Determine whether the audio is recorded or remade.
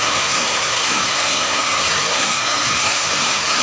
remade